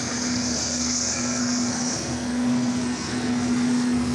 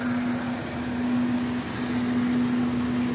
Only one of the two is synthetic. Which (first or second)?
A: first